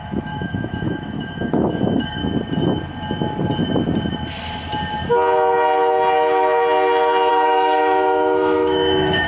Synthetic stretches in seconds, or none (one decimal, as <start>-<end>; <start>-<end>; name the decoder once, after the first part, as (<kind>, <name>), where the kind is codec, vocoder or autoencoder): 0.0-2.2 (autoencoder, DAC-VAE); 7.3-9.3